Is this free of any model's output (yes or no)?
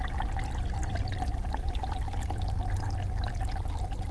yes